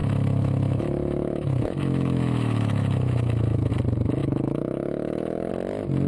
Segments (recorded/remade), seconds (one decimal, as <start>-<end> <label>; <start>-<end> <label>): 0.0-3.7 remade; 3.7-4.2 recorded; 4.2-5.5 remade; 5.5-6.1 recorded